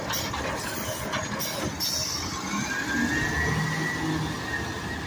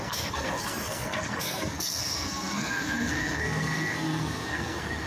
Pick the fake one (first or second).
second